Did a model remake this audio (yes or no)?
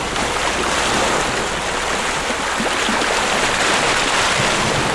no